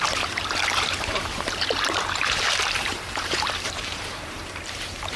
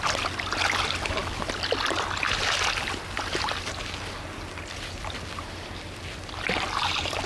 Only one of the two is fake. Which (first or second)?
first